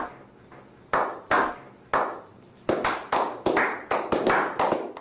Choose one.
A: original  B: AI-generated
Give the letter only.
A